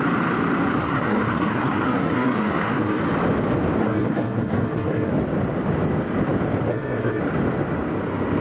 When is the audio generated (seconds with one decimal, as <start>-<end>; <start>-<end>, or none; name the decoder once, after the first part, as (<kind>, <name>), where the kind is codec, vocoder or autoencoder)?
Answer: 0.8-3.0 (codec, SNAC); 3.8-5.1; 6.7-7.2